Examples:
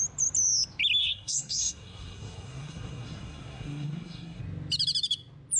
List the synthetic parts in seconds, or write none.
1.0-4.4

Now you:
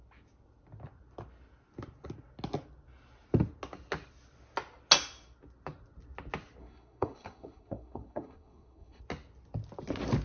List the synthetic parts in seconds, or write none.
6.6-9.0

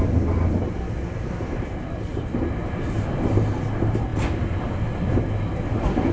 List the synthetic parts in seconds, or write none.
none

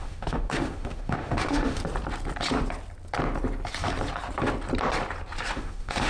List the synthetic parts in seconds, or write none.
0.0-1.8; 5.5-6.1